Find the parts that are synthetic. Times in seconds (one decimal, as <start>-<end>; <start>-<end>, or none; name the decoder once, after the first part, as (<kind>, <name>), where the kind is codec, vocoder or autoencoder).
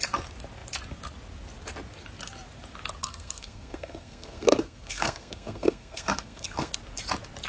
3.0-6.7 (codec, SNAC)